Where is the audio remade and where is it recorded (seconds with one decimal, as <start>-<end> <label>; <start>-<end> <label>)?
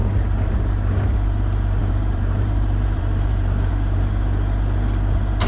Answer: 0.0-1.8 recorded; 1.8-3.7 remade; 3.7-5.5 recorded